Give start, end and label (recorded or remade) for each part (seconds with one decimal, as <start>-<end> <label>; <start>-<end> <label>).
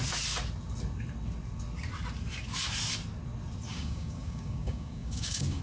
0.0-3.7 recorded; 3.7-5.6 remade